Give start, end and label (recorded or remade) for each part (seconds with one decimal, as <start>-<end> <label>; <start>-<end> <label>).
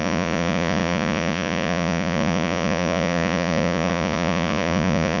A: 0.0-5.2 remade